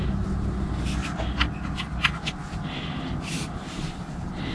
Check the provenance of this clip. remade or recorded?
recorded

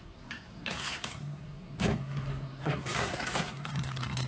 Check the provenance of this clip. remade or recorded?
remade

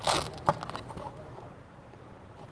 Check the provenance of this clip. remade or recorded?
recorded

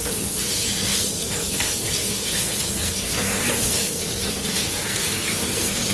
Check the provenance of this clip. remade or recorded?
remade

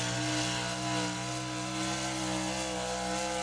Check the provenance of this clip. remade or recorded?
recorded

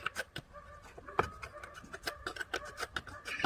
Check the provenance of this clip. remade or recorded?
recorded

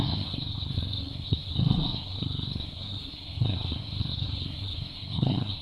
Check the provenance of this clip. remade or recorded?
remade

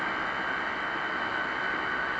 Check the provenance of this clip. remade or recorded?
recorded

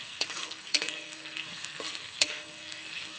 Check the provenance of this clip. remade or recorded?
remade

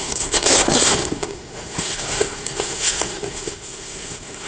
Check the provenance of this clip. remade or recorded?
remade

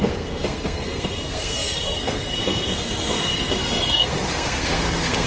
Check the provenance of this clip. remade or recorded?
remade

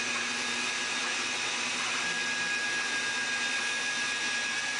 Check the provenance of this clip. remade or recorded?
recorded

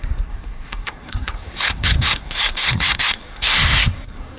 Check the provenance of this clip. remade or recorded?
remade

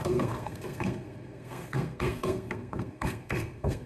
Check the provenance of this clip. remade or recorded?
remade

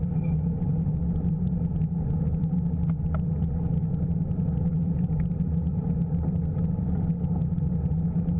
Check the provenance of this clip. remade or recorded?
recorded